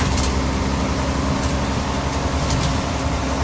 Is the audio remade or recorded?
recorded